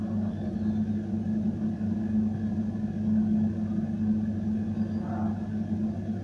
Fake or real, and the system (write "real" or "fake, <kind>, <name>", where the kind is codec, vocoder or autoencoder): real